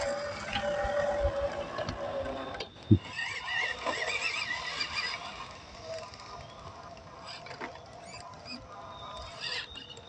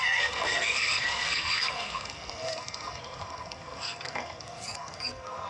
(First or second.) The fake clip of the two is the second